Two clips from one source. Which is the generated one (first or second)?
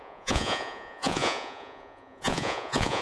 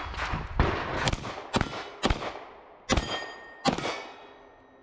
first